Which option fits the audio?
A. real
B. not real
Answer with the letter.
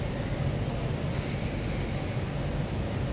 A